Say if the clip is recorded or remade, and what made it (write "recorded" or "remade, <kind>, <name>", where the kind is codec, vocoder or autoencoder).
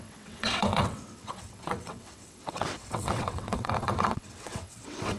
remade, vocoder, WaveNeXt